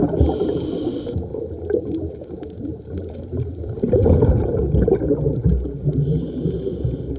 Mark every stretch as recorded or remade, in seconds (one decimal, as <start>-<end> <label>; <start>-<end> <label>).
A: 0.0-1.3 recorded; 1.3-3.2 remade; 3.2-4.0 recorded; 4.0-4.6 remade; 4.6-7.2 recorded